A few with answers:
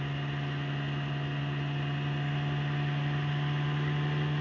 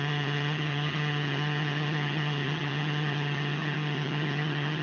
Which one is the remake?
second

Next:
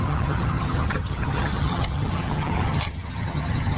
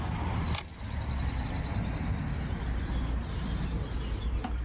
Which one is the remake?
first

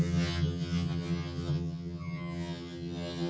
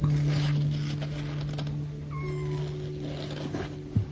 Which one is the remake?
first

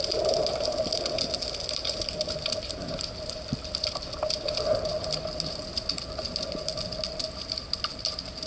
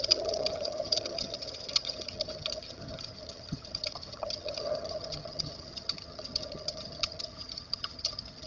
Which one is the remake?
second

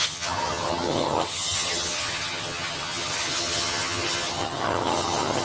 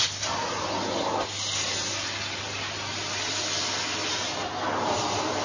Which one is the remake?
first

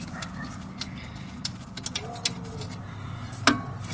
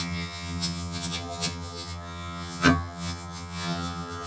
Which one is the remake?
second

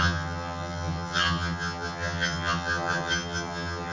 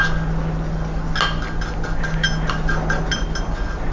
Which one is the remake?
first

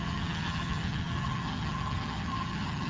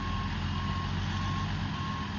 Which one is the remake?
first